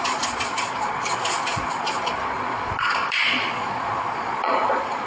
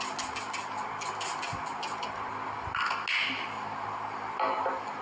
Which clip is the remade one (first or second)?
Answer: first